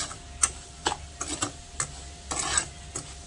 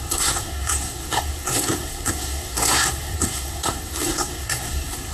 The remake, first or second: second